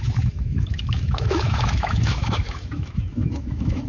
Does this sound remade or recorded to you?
remade